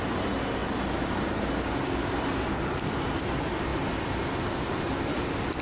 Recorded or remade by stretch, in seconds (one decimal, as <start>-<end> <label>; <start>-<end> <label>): 0.0-5.6 recorded